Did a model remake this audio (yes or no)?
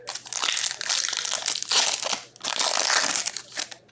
no